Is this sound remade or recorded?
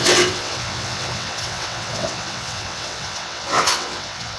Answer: remade